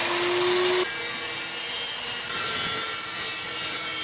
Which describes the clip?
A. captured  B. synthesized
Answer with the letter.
A